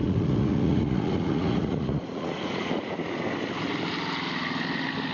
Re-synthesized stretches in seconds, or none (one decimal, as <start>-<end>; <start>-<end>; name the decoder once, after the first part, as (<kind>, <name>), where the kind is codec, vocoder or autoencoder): 0.0-3.1 (vocoder, Vocos)